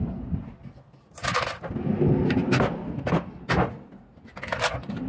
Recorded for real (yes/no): yes